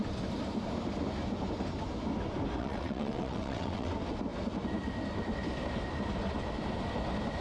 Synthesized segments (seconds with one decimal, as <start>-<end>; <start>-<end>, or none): 2.6-3.9

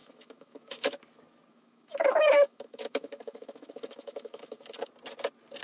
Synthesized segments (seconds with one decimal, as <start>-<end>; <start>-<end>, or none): 0.0-1.0; 1.5-4.9

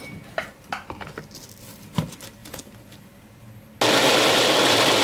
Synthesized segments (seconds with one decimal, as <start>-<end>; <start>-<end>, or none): none

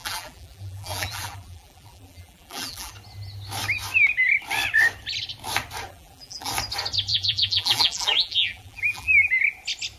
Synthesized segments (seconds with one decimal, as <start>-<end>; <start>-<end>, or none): 0.0-2.9; 5.9-6.5; 7.1-9.3